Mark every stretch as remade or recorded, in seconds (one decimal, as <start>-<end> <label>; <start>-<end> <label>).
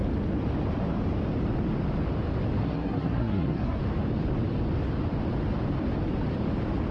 0.0-2.6 recorded; 2.6-3.8 remade; 3.8-6.9 recorded